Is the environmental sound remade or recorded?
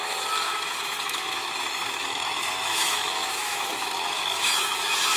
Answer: remade